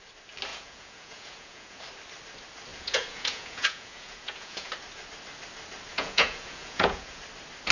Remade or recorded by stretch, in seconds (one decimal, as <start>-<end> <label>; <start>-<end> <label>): 0.0-0.5 recorded; 0.5-1.8 remade; 1.8-2.7 recorded; 2.7-4.7 remade; 4.7-5.9 recorded; 5.9-7.2 remade; 7.2-7.7 recorded